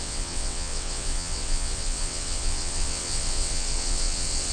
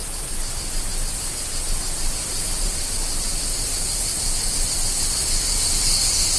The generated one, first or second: first